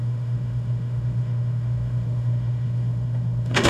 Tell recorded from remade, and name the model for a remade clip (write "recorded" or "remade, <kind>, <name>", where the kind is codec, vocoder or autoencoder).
remade, autoencoder, DAC-VAE